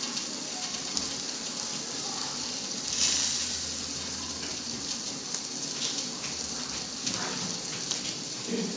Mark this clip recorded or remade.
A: recorded